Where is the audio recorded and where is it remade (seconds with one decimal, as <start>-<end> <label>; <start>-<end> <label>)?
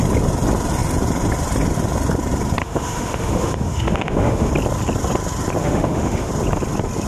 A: 0.0-2.6 recorded; 2.6-4.5 remade; 4.5-5.6 recorded; 5.6-6.3 remade; 6.3-7.1 recorded